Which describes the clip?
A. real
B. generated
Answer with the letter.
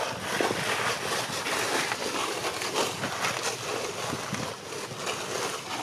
A